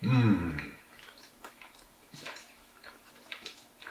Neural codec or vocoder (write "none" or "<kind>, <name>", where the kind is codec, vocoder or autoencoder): autoencoder, DAC-VAE